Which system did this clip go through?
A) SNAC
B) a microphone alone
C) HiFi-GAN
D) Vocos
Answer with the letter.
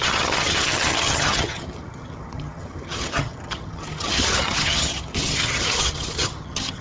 C